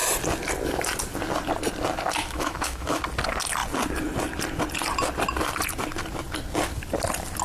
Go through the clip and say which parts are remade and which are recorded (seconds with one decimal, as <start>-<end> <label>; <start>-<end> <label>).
0.0-2.2 recorded; 2.2-3.0 remade; 3.0-7.4 recorded